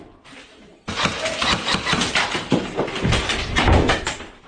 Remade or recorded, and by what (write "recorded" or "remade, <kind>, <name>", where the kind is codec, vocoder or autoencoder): remade, vocoder, BigVGAN v2